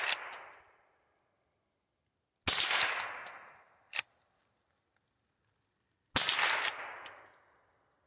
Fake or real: real